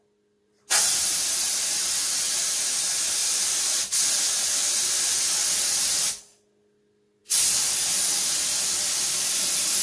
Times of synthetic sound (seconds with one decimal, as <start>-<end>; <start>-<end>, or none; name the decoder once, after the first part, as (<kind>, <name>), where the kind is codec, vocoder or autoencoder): 0.4-2.6 (vocoder, BigVGAN v2); 3.2-3.8